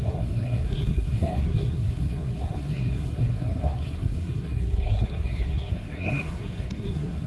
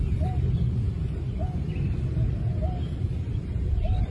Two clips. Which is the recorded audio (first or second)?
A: second